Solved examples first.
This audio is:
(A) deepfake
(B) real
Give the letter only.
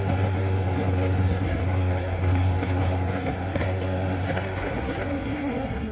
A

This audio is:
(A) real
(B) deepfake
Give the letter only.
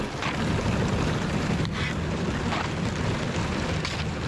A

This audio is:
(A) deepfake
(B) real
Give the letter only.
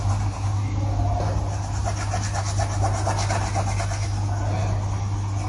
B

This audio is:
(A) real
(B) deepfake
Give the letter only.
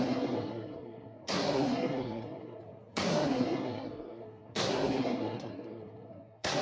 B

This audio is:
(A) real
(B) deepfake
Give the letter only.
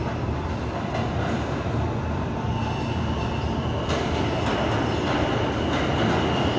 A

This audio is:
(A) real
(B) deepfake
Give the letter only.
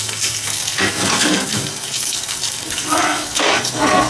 B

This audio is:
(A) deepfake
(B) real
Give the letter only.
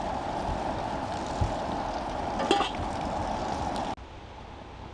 B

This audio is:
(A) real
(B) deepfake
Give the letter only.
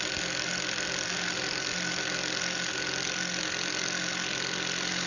A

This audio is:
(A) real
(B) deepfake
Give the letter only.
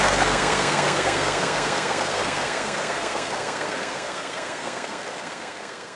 B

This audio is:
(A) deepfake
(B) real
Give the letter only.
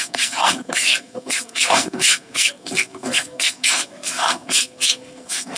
A